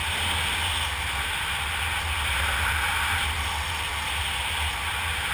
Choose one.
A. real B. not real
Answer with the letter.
A